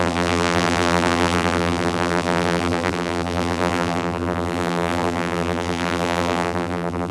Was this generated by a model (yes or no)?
yes